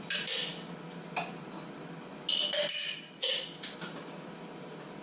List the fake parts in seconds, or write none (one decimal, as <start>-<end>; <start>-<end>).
0.0-0.5; 3.5-5.0